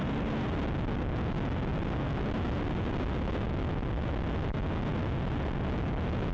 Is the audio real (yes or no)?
yes